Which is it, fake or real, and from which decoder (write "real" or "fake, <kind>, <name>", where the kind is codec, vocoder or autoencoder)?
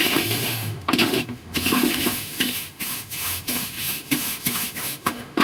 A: fake, autoencoder, DAC-VAE